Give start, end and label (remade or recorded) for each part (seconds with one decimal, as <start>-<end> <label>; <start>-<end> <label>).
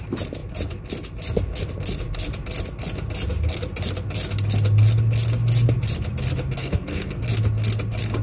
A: 0.0-6.6 recorded; 6.6-7.2 remade; 7.2-8.2 recorded